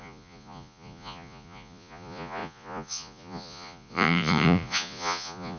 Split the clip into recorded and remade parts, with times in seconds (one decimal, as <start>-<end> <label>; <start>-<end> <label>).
0.0-5.6 remade